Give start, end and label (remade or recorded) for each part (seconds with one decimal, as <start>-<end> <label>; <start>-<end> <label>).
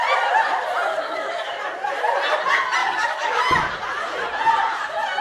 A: 0.0-0.9 recorded; 0.9-1.6 remade; 1.6-2.8 recorded; 2.8-3.4 remade; 3.4-5.2 recorded